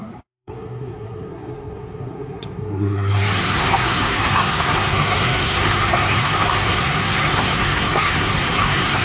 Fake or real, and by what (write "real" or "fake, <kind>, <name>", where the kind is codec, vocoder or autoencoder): fake, codec, SNAC